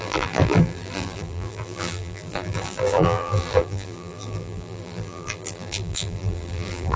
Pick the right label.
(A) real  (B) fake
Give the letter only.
B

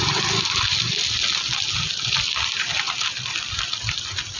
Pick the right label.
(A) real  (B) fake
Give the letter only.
B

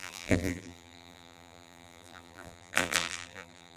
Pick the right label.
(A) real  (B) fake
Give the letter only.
B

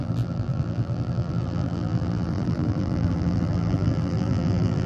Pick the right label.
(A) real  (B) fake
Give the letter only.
B